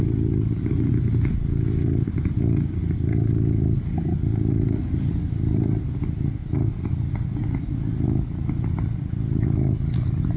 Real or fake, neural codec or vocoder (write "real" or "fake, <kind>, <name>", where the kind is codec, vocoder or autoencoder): real